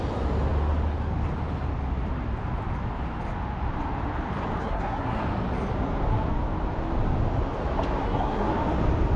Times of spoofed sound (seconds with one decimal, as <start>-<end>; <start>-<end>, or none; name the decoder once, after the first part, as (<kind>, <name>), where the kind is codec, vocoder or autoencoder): 4.6-5.2 (codec, SNAC); 8.0-8.5